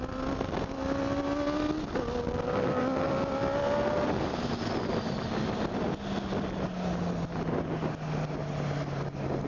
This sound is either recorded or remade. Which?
recorded